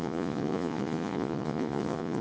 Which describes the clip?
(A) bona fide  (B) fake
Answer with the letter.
B